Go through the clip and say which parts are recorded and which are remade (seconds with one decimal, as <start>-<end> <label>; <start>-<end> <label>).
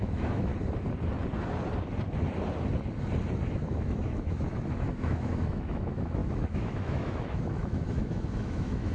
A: 0.0-0.5 remade; 0.5-3.5 recorded; 3.5-8.9 remade